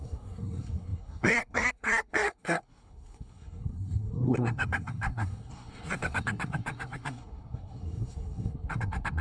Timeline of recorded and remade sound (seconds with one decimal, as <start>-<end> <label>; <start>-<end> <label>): 0.0-9.2 remade